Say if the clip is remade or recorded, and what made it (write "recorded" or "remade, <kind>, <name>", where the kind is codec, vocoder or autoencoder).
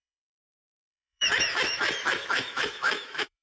remade, autoencoder, DAC-VAE